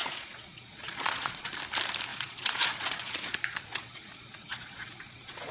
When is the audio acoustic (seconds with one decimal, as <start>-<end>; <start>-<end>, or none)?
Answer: 1.5-2.1